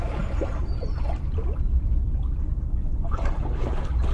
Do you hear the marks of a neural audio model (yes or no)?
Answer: no